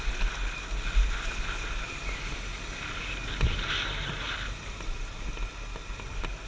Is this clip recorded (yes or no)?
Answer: yes